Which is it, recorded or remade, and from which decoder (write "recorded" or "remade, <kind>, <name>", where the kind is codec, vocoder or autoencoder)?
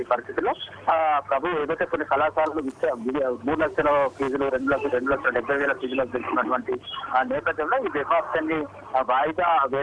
recorded